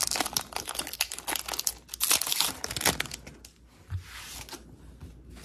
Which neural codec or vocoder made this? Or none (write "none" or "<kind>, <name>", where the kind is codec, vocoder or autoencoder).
none